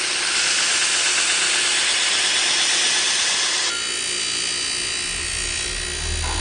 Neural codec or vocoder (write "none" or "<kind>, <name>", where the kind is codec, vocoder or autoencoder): none